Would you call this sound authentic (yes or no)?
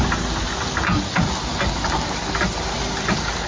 yes